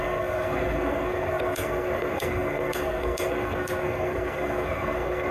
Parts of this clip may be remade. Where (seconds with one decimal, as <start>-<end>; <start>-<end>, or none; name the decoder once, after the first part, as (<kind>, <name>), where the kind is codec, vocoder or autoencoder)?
0.0-5.3 (codec, SNAC)